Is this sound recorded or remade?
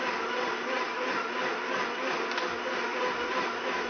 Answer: recorded